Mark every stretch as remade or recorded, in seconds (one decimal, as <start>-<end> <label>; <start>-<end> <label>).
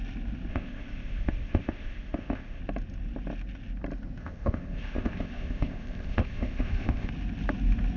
0.0-0.5 recorded; 0.5-2.6 remade; 2.6-4.2 recorded; 4.2-7.1 remade; 7.1-8.0 recorded